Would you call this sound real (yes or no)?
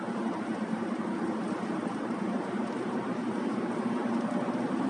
no